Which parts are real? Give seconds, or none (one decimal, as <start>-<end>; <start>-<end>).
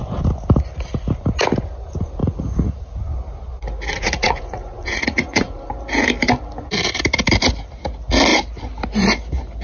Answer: 0.0-2.2; 2.9-3.9; 5.7-9.6